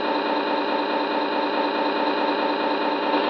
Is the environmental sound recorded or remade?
recorded